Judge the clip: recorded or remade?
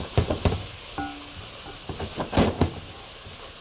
recorded